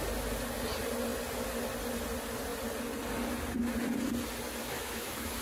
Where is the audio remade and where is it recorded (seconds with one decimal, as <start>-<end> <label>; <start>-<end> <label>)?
0.0-4.6 recorded; 4.6-5.4 remade